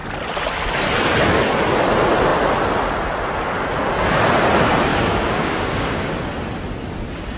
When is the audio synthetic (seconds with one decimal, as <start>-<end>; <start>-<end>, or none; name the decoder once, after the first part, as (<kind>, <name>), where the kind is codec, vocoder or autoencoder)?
4.9-6.1 (codec, DAC)